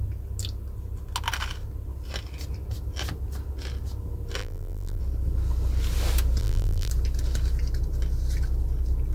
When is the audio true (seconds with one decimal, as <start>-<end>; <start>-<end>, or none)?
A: 0.0-4.4; 5.0-6.4; 6.9-9.1